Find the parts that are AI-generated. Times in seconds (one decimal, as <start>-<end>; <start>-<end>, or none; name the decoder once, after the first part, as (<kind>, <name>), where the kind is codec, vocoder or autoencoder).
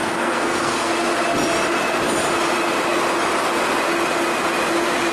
0.0-0.9 (codec, SNAC)